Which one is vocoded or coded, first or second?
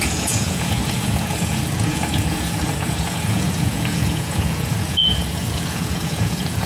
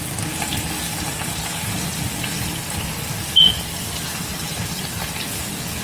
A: first